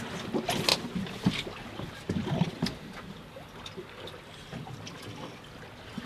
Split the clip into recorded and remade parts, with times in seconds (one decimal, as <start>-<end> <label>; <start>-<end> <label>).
0.0-6.1 recorded